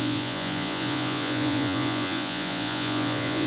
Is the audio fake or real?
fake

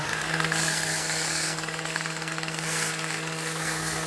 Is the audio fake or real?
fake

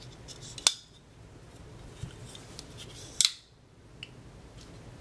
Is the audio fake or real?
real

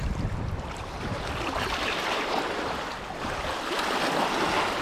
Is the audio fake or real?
real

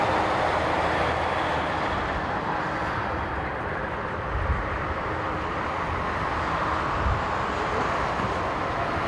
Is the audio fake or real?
real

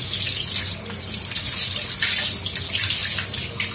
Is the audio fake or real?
real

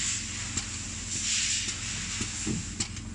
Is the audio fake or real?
real